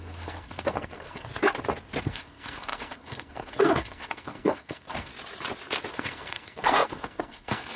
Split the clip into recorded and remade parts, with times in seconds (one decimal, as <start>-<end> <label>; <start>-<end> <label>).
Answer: 0.0-1.3 remade; 1.3-2.0 recorded; 2.0-5.1 remade; 5.1-5.9 recorded; 5.9-7.8 remade